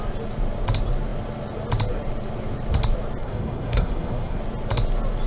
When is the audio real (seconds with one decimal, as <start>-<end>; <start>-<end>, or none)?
0.0-3.2; 4.4-5.3